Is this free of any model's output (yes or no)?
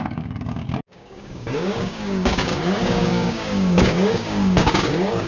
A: no